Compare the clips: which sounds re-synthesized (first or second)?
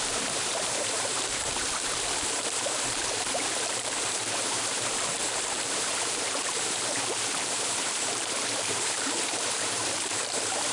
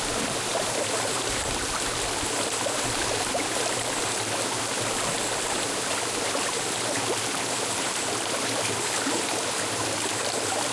first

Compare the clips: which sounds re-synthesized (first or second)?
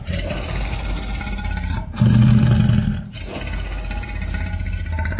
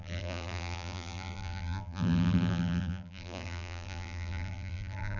second